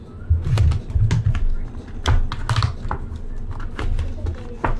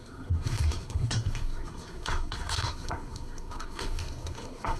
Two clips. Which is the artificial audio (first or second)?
second